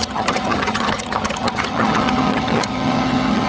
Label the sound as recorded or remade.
remade